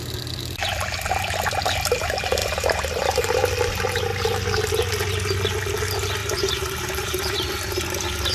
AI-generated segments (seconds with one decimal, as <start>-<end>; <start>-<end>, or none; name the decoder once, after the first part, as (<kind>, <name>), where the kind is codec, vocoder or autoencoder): 2.4-3.4 (vocoder, BigVGAN v2); 6.2-7.8